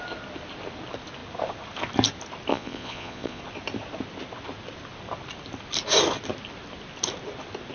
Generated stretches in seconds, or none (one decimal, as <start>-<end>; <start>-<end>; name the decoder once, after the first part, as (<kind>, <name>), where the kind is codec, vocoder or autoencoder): 2.5-3.4 (vocoder, Vocos)